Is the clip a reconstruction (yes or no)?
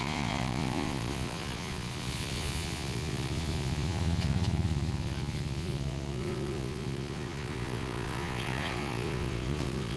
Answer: yes